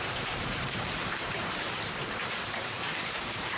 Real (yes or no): no